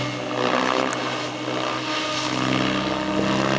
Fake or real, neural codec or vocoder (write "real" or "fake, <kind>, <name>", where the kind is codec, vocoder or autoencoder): real